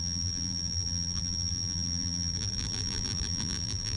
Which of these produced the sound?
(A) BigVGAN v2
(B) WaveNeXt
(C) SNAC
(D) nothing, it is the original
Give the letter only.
A